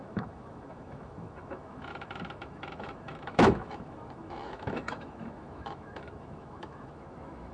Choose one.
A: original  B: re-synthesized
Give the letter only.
B